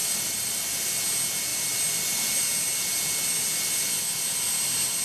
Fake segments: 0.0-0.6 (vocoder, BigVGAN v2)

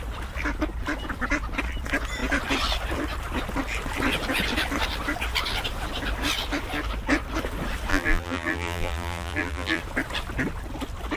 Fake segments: 7.9-9.8 (vocoder, BigVGAN v2)